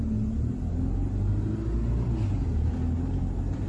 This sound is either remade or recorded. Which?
recorded